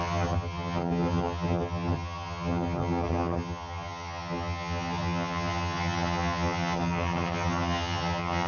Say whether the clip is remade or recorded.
remade